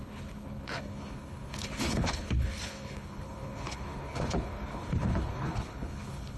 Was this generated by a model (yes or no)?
yes